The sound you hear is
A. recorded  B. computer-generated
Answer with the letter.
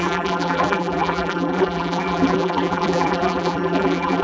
B